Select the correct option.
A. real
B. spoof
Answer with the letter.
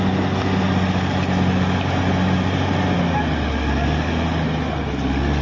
A